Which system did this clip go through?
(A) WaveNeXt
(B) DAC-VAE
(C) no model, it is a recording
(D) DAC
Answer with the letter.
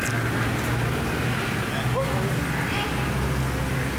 C